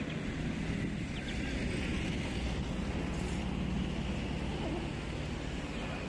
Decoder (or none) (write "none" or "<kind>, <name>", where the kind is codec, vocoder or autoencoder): none